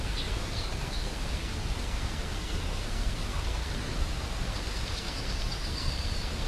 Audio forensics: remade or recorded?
remade